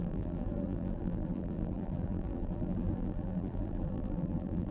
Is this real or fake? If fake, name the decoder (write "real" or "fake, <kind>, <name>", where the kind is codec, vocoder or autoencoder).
fake, vocoder, BigVGAN v2